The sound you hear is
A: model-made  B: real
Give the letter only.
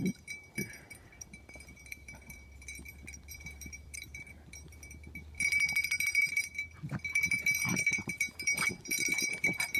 A